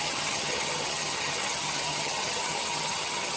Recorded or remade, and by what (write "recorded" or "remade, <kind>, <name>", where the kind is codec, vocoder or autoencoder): remade, vocoder, HiFi-GAN